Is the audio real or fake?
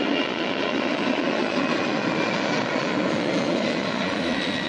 fake